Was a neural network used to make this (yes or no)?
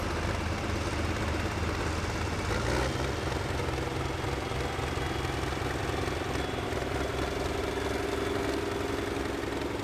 no